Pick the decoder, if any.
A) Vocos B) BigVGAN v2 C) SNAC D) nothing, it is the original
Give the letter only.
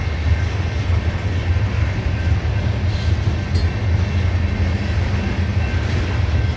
D